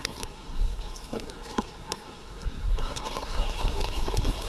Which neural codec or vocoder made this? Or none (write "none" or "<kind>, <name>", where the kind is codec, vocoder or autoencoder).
codec, SNAC